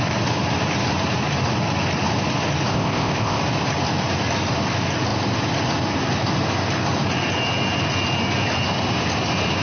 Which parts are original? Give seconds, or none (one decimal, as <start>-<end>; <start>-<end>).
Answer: 0.0-2.7; 3.4-9.6